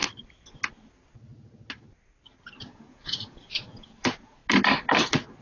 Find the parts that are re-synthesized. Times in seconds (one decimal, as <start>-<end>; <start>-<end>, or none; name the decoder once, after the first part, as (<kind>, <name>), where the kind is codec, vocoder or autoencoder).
2.6-4.4 (vocoder, Vocos)